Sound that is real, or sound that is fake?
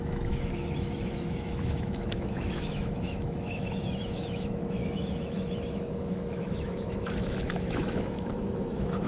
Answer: fake